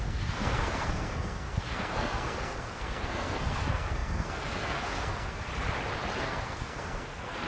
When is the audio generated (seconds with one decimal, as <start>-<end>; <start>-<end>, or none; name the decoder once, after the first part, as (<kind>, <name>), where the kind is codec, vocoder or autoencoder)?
0.0-5.5 (codec, SNAC); 6.2-7.5